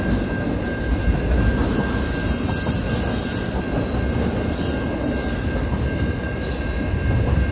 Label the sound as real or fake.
real